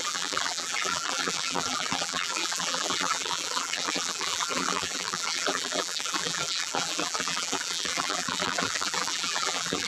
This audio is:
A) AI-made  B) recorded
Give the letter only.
A